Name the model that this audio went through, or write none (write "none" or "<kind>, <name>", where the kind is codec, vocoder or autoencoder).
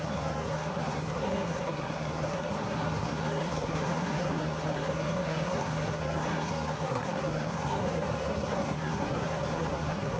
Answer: codec, SNAC